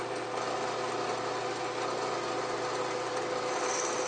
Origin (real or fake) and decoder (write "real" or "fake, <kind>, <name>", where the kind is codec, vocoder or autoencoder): real